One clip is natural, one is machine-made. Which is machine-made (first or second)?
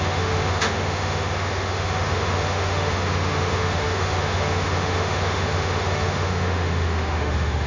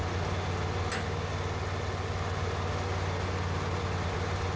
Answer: first